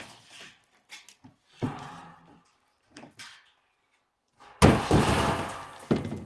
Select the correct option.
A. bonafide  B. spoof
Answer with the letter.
A